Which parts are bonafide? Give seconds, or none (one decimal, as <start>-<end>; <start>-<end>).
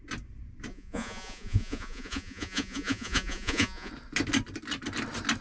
0.0-0.7; 3.9-5.4